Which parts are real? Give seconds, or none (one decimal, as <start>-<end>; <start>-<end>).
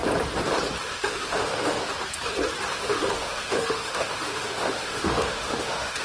0.0-0.8; 1.9-2.7